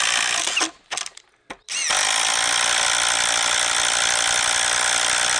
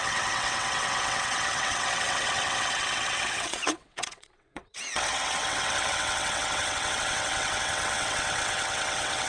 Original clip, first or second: first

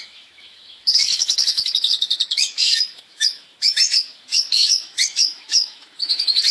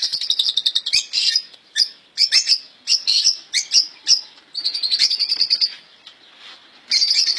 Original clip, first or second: second